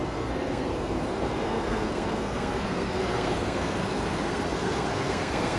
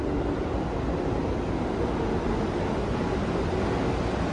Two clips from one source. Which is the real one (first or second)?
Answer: second